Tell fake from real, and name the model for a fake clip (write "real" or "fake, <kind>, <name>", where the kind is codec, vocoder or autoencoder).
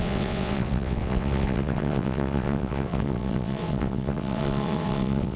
fake, vocoder, WaveNeXt